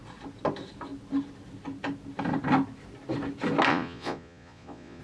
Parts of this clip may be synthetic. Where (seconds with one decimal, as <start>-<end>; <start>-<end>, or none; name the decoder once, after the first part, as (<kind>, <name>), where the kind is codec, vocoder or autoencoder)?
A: 3.7-5.0 (vocoder, Vocos)